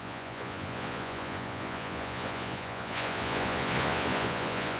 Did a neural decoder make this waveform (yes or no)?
yes